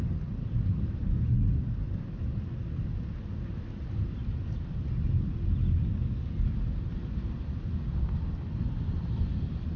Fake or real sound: real